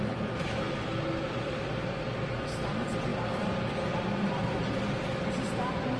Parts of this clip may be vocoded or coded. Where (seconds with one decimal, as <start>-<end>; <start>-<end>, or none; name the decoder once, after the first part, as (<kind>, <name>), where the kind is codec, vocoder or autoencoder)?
none